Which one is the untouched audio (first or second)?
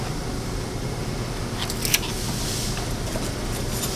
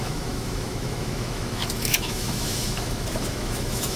first